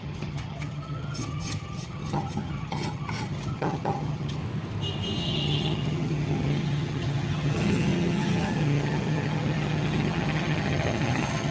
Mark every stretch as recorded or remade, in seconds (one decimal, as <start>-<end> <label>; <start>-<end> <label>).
0.0-4.4 remade; 4.4-5.2 recorded; 5.2-11.5 remade